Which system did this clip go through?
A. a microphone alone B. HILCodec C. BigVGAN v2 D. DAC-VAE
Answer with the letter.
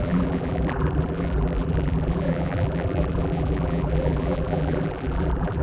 C